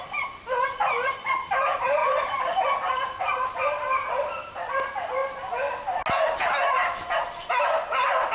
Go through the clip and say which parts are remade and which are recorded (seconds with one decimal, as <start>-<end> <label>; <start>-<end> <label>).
0.0-8.3 recorded